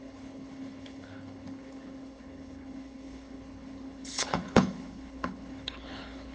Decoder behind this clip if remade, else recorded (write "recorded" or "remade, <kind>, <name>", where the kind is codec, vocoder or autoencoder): remade, codec, HILCodec